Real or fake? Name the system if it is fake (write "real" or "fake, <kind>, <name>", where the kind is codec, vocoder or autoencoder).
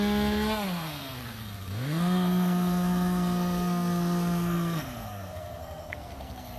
fake, codec, SNAC